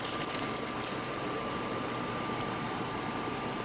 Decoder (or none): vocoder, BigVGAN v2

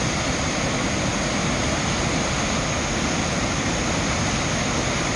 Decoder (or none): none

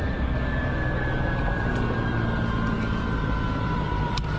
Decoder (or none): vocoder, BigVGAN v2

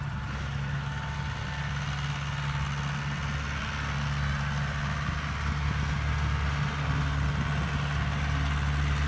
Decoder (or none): none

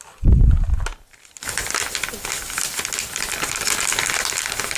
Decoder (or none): none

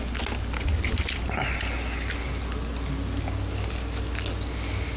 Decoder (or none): none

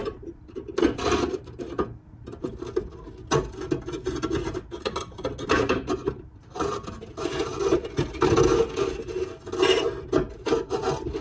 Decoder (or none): none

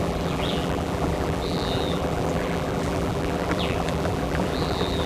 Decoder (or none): vocoder, BigVGAN v2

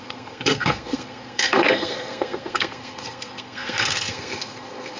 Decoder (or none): codec, SNAC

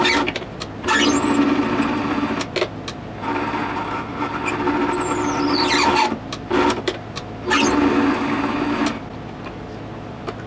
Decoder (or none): none